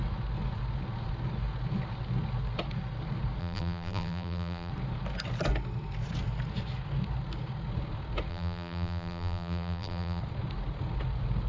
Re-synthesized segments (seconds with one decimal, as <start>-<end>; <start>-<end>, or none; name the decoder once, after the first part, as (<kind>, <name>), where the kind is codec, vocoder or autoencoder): 3.4-4.7 (vocoder, BigVGAN v2); 8.3-10.2